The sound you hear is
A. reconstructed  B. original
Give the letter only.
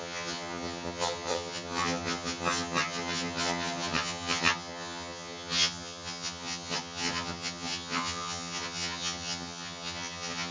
A